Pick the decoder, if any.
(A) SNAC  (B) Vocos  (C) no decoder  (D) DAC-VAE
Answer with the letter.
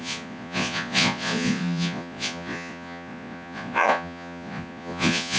B